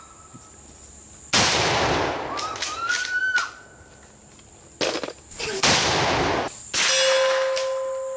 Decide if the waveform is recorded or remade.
recorded